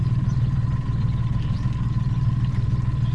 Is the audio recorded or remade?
recorded